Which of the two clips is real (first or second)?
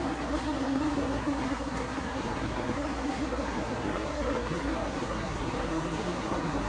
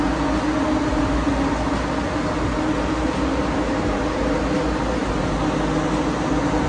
second